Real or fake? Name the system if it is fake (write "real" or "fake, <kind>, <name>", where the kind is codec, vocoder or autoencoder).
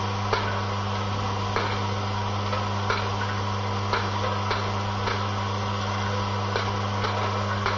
real